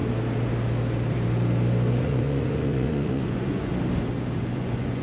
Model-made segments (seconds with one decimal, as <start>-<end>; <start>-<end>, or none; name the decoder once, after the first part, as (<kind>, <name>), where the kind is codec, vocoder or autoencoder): 2.0-3.7 (vocoder, Vocos); 4.4-5.0